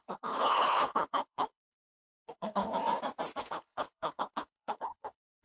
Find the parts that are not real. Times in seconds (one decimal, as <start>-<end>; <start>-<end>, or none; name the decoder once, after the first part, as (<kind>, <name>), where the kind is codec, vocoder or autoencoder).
0.0-2.6 (codec, HILCodec); 3.4-5.4